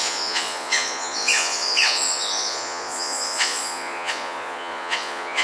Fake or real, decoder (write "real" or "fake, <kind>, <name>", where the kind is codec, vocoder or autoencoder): fake, vocoder, Vocos